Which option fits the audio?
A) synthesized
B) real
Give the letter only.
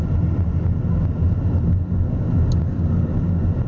B